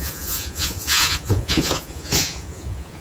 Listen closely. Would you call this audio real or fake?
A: fake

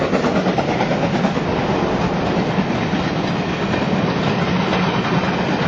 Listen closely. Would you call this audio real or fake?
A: real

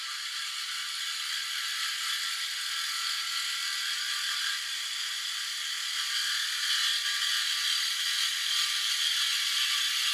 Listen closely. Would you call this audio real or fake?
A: real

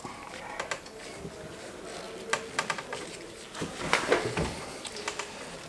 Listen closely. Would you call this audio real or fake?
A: real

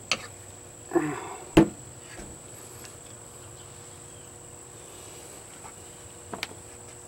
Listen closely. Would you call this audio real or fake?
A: real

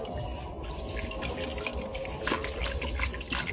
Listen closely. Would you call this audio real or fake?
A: real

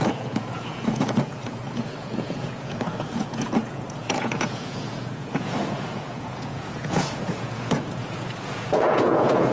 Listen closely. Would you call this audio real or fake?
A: fake